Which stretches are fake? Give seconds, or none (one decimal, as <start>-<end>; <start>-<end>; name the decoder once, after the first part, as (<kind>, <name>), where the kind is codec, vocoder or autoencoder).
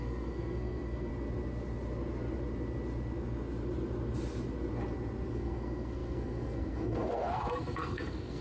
0.0-1.1 (codec, SNAC); 5.3-8.4